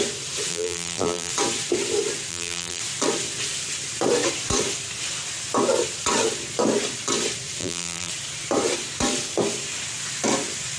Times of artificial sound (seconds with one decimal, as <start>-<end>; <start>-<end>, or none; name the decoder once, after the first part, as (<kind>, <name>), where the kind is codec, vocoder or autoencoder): 0.5-1.3 (vocoder, BigVGAN v2); 2.3-2.8; 7.6-8.1